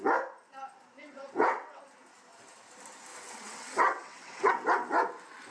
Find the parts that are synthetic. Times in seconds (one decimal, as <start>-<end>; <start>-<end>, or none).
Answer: 1.0-1.8; 3.1-4.5